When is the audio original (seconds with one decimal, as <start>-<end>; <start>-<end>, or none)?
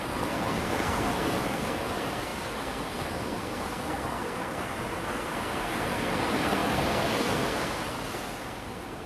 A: none